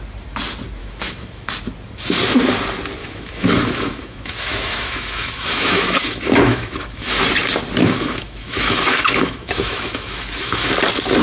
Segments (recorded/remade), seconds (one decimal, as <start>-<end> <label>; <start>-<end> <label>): 0.0-0.8 recorded; 0.8-1.5 remade; 1.5-3.0 recorded; 3.0-7.2 remade; 7.2-7.8 recorded; 7.8-10.7 remade; 10.7-11.2 recorded